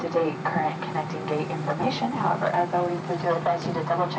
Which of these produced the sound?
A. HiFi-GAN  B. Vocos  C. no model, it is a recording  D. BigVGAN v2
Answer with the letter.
D